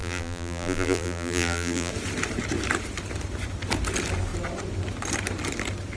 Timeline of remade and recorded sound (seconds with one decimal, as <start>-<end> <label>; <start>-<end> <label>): 0.0-1.9 remade; 1.9-6.0 recorded